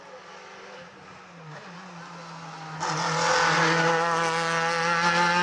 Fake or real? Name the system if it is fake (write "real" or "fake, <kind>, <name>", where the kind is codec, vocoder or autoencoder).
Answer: real